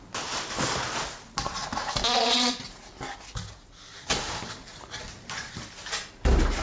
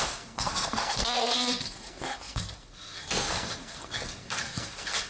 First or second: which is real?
first